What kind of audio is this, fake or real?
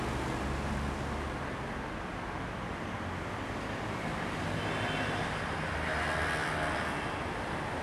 real